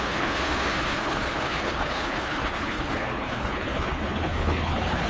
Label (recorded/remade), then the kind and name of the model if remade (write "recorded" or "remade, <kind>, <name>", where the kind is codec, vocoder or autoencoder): remade, codec, HILCodec